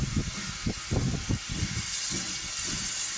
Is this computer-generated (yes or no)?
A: no